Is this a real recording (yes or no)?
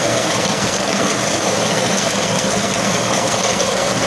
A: no